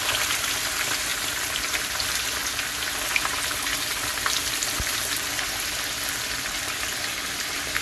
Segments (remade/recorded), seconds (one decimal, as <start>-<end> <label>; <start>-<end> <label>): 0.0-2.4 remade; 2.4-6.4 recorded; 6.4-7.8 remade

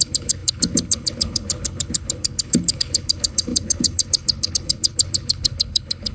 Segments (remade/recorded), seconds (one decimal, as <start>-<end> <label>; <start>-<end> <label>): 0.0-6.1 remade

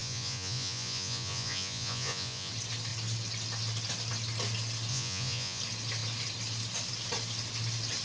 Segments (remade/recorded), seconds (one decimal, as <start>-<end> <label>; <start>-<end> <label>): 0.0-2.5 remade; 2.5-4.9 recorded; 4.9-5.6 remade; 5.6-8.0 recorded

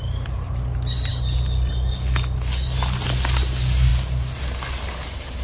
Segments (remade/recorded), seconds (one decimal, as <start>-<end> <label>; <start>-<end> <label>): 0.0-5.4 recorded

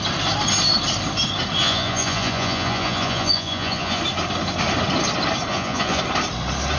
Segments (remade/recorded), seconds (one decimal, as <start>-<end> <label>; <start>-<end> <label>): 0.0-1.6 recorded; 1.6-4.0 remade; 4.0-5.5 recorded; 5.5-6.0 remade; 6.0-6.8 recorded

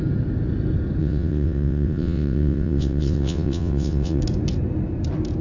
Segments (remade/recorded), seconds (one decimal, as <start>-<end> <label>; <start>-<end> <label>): 0.0-1.0 recorded; 1.0-4.2 remade; 4.2-5.4 recorded